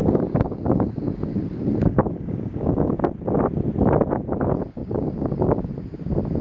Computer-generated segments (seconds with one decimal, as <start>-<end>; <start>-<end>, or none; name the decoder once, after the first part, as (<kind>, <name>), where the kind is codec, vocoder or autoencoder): 0.0-3.0 (codec, DAC); 4.8-5.7